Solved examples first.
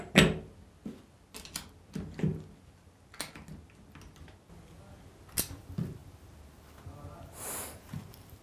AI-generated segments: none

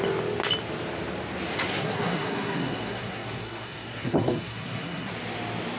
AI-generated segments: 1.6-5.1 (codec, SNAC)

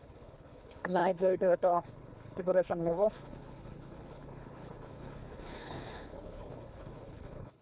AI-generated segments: 0.0-7.6 (codec, HILCodec)

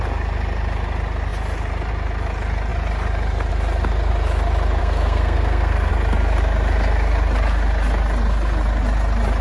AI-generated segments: 4.8-5.9 (codec, SNAC)